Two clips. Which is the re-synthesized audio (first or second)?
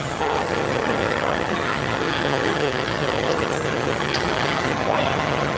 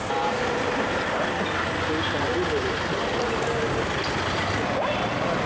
first